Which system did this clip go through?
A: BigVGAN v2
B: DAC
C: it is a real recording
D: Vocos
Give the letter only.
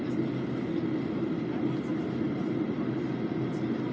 C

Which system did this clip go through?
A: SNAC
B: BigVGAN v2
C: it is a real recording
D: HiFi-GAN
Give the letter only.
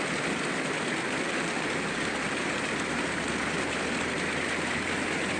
C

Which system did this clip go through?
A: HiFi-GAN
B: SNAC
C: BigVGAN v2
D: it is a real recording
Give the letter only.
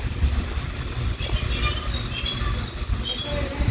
D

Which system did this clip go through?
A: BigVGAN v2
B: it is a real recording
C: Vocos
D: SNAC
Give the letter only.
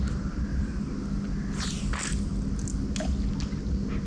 B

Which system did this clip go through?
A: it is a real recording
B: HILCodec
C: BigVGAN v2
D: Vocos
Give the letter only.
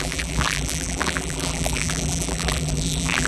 C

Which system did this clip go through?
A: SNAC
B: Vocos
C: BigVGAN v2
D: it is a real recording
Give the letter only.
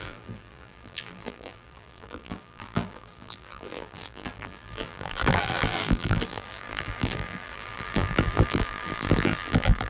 C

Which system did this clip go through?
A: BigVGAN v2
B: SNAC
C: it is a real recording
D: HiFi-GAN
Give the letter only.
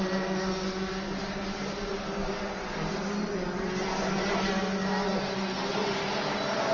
C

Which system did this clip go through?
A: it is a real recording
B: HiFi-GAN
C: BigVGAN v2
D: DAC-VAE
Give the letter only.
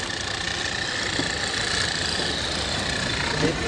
A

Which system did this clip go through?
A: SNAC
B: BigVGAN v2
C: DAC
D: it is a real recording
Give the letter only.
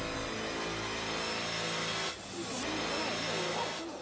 D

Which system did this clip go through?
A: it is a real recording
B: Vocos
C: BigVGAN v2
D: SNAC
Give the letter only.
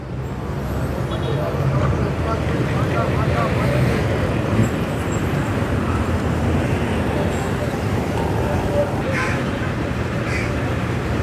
C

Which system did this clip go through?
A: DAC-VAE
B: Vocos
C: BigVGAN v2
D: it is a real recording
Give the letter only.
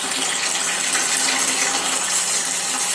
D